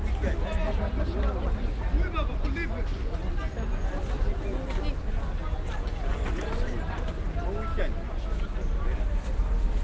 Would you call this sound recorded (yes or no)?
yes